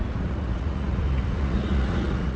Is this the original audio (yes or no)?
no